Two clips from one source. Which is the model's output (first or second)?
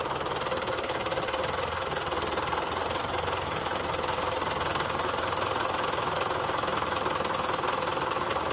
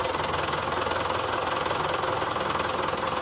first